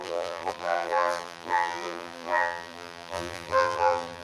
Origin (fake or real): fake